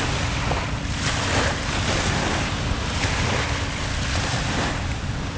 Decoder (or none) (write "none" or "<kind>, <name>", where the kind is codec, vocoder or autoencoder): none